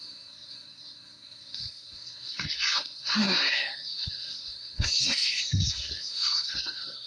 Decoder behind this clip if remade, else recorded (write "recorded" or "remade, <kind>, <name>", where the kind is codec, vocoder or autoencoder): remade, codec, SNAC